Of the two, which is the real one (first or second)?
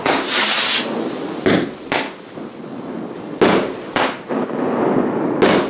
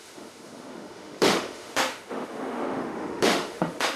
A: first